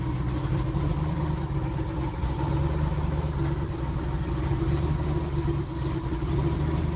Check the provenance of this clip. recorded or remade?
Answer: recorded